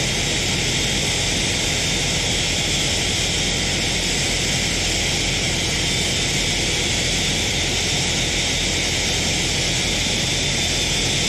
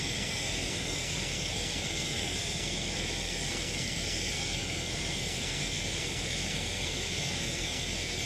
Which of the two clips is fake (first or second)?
second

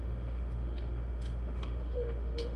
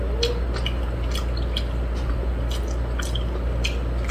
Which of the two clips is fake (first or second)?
first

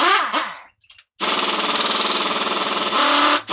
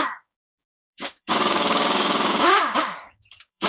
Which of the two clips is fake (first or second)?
second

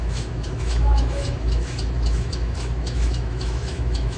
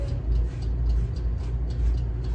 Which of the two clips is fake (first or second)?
first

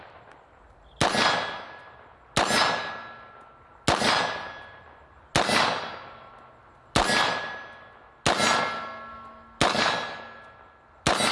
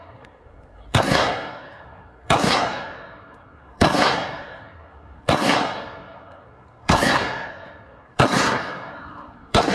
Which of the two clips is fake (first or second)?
second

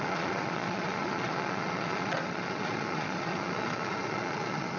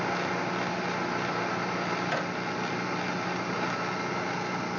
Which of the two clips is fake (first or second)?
first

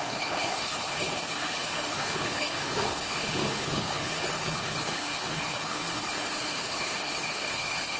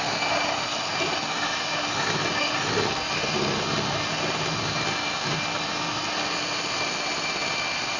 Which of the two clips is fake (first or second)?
first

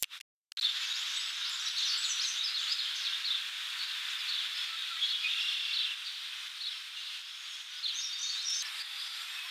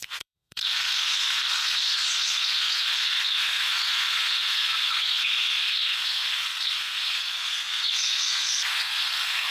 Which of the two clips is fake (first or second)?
second